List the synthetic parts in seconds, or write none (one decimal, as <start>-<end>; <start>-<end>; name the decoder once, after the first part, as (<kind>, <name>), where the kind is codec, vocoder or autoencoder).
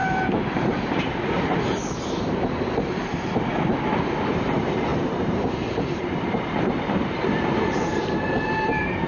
0.0-3.1 (vocoder, BigVGAN v2); 4.3-9.1